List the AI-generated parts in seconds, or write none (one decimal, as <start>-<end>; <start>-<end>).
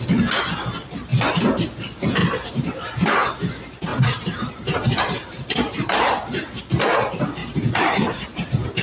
2.2-2.9; 3.9-6.6; 7.4-8.8